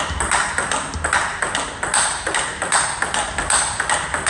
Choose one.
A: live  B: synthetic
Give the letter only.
A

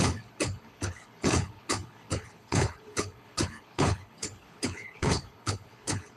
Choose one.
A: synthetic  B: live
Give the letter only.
A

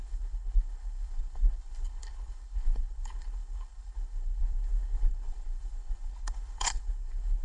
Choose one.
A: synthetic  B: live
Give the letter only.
A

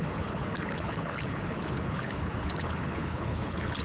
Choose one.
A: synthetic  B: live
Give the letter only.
A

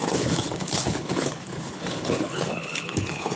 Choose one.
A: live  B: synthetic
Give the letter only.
B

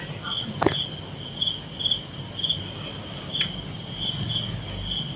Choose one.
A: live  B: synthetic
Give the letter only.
A